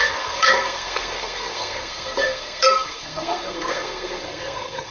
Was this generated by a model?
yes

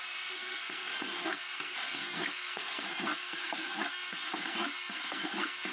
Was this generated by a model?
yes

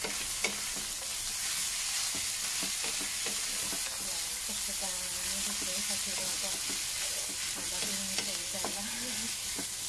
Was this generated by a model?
no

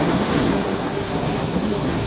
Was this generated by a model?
yes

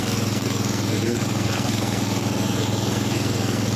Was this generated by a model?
yes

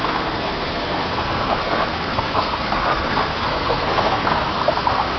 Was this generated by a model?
yes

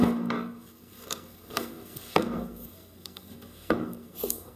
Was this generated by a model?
yes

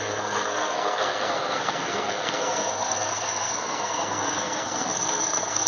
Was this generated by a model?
yes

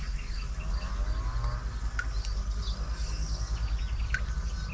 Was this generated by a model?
no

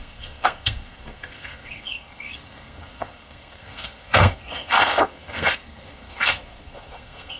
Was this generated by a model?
yes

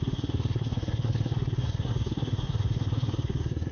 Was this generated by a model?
yes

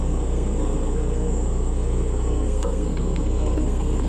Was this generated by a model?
yes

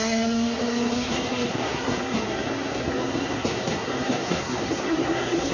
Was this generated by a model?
yes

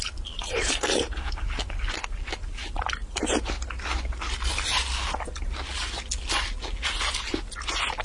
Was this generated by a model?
no